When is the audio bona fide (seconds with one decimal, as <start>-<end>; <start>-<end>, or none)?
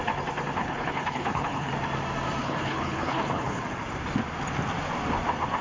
0.0-0.6; 1.7-2.4; 3.6-5.6